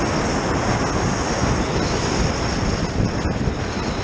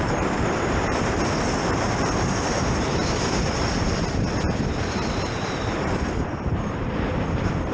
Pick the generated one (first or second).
second